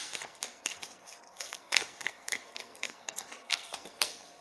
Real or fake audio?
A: fake